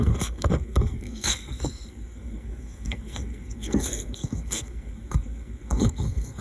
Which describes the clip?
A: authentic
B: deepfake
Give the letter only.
B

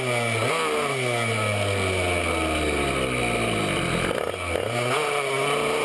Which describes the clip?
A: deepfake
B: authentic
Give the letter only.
B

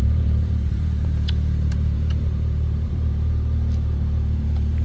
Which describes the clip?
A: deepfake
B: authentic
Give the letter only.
A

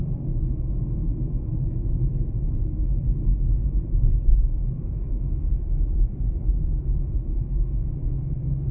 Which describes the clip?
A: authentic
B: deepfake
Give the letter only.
B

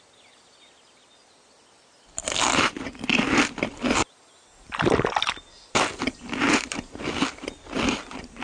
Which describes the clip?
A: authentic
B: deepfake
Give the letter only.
B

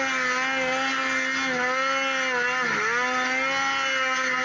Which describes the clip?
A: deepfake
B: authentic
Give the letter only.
B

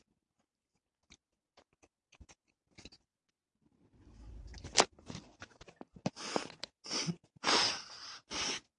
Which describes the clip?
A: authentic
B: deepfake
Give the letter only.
A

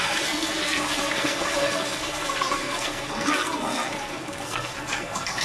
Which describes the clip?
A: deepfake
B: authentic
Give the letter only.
A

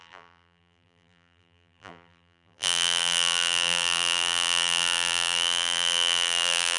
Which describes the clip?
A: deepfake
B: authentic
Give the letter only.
A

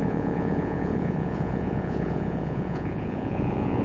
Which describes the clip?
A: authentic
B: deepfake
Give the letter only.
B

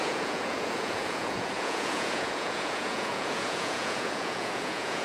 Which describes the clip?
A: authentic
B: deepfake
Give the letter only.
B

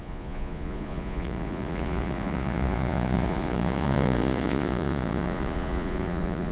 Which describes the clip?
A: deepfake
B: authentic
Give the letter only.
A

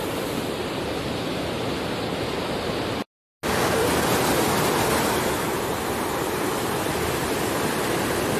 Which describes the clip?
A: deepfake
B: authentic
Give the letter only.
B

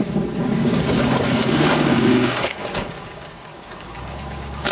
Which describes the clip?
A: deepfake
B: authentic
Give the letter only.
A